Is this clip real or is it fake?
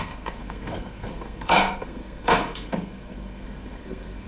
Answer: fake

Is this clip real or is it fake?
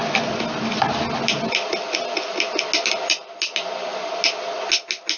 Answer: real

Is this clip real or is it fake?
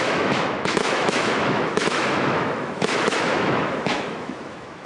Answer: fake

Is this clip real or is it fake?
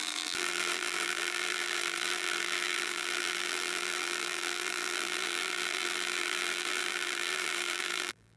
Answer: fake